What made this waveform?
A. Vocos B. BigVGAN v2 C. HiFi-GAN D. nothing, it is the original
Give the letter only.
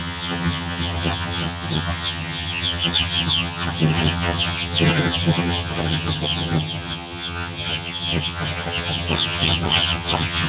C